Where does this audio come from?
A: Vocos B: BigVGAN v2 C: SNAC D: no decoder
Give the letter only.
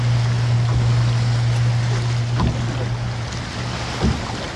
D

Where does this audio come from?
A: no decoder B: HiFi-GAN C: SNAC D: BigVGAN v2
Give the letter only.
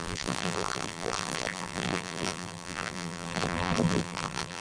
D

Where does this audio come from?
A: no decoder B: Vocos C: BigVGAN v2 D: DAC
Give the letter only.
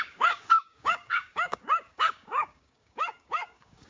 D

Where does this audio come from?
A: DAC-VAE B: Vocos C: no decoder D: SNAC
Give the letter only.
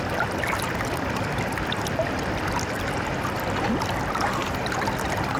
C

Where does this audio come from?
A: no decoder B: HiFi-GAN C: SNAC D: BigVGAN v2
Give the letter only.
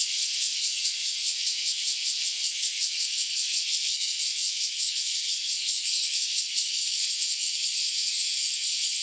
C